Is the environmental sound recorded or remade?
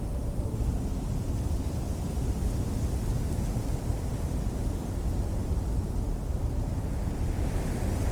recorded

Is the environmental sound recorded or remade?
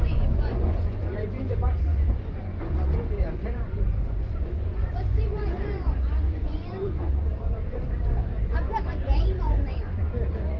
remade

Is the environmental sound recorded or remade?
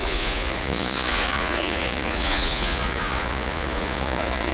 remade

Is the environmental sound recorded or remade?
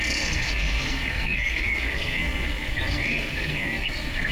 remade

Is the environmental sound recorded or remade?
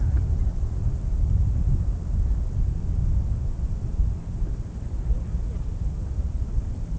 remade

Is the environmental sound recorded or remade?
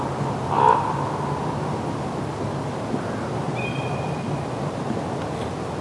recorded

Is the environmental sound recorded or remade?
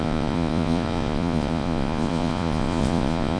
remade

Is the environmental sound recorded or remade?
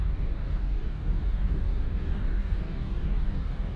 remade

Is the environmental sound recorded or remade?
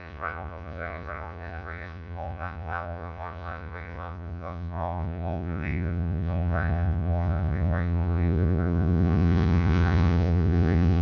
remade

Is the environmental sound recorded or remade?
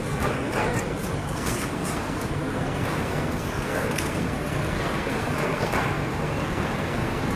remade